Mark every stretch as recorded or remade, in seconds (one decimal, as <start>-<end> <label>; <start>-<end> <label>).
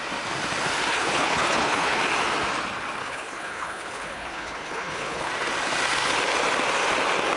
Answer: 0.0-0.9 recorded; 0.9-2.0 remade; 2.0-3.0 recorded; 3.0-5.3 remade; 5.3-7.4 recorded